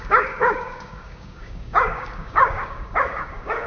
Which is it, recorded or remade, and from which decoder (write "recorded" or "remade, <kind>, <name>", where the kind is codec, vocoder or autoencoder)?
remade, codec, DAC